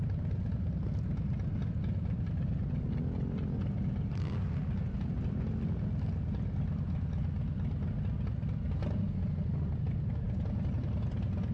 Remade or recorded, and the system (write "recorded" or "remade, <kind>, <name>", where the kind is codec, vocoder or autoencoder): recorded